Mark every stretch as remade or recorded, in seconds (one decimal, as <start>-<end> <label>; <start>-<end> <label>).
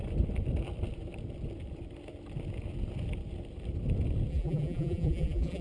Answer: 0.0-4.3 recorded; 4.3-5.6 remade